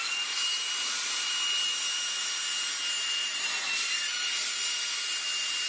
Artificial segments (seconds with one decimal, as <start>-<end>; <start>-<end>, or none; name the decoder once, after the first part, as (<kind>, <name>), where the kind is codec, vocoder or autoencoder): none